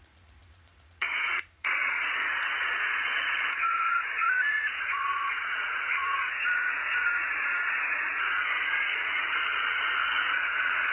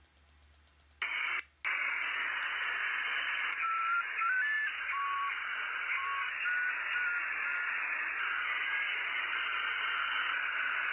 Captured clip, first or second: second